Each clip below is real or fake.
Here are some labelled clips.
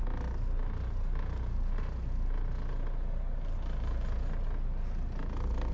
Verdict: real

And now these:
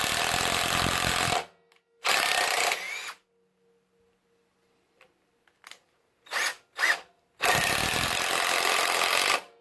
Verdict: real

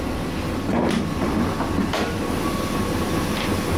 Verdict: real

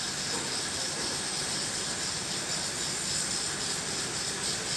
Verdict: real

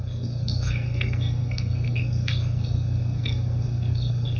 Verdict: fake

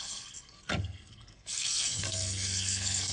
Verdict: fake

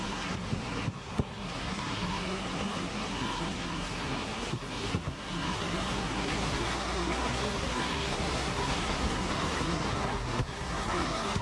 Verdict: fake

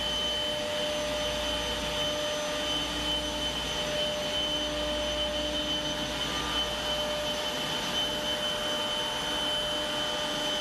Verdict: real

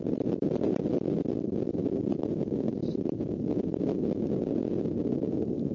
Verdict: real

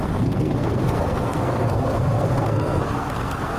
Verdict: fake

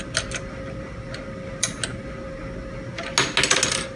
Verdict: real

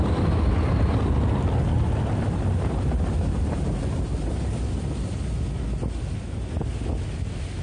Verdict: real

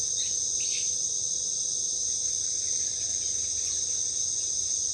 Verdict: real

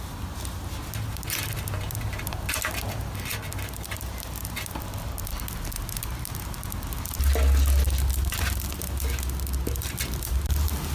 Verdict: real